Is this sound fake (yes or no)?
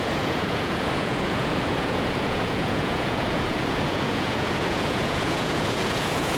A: yes